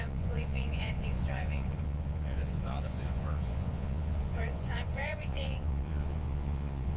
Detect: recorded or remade remade